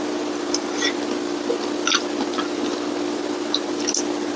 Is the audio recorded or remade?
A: recorded